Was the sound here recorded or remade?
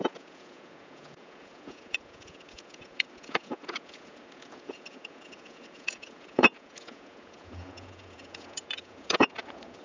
remade